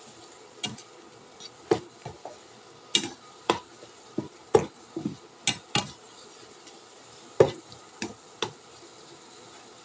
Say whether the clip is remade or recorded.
recorded